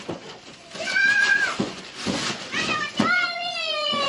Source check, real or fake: fake